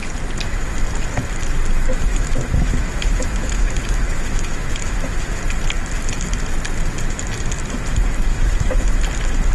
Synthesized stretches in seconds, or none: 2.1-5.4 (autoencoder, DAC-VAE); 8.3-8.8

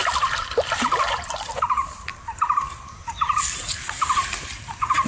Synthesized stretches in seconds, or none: none

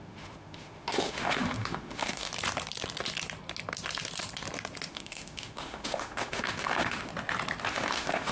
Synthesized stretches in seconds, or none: 0.0-2.3 (autoencoder, DAC-VAE); 4.9-7.1; 7.7-8.3

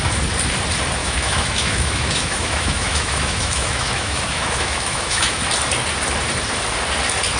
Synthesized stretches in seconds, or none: 1.0-5.4 (autoencoder, DAC-VAE)